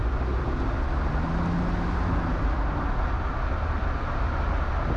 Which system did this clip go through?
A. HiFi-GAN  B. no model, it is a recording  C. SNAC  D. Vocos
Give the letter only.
B